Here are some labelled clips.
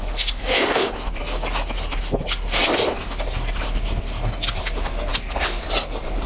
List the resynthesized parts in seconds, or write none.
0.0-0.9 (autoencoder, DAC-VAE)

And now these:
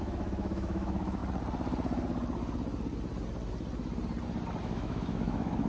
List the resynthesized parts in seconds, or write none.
0.0-1.2 (autoencoder, DAC-VAE); 4.6-5.7

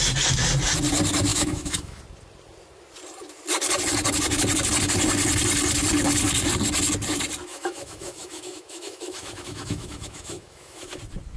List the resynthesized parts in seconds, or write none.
1.3-2.0 (autoencoder, DAC-VAE); 7.5-11.0

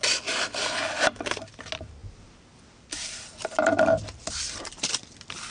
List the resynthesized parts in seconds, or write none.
none